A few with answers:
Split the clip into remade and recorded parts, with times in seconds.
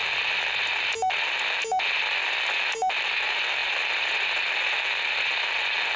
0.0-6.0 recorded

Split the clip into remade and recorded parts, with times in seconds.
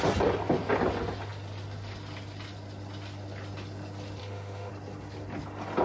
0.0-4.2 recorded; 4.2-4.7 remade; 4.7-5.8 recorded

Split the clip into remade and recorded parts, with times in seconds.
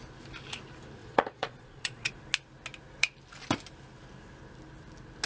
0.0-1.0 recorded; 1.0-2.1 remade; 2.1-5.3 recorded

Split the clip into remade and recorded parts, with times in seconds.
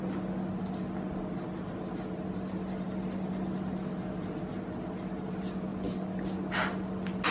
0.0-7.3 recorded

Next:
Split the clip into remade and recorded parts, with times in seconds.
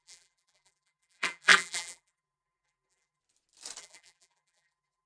0.0-3.2 remade; 3.2-3.8 recorded; 3.8-5.1 remade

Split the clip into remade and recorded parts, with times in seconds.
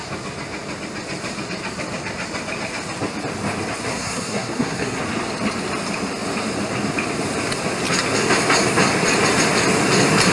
0.0-3.9 recorded; 3.9-5.0 remade; 5.0-10.3 recorded